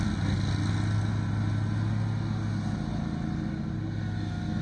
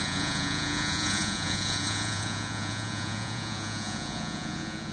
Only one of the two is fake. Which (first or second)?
second